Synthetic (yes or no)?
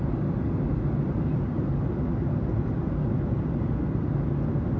no